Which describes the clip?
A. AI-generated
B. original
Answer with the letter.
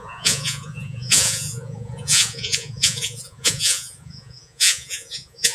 A